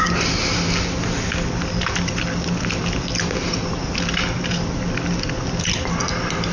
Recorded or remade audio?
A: recorded